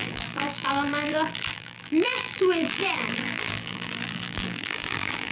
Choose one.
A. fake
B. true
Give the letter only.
A